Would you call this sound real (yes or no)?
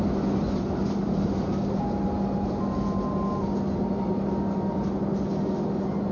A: yes